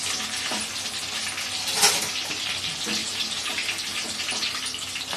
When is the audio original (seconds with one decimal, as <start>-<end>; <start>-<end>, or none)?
0.0-3.0; 4.1-5.2